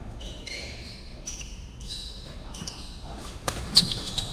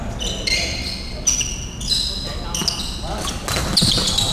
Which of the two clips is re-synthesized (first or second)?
first